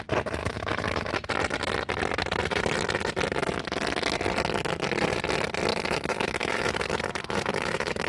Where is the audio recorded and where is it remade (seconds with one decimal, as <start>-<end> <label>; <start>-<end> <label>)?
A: 0.0-0.4 recorded; 0.4-1.3 remade; 1.3-5.7 recorded; 5.7-8.1 remade